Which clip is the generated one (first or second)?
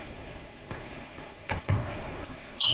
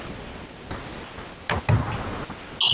first